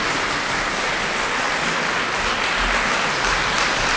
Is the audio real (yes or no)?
yes